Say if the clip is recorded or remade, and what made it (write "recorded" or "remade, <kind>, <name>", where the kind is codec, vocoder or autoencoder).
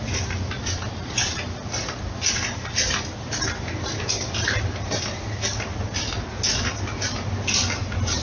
recorded